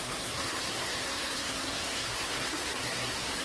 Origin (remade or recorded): remade